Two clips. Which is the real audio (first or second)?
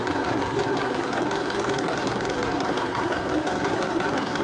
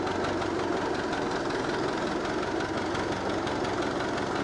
second